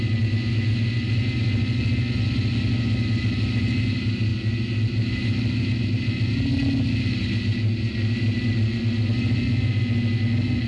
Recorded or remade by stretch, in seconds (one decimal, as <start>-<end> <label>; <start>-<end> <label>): 0.0-10.7 recorded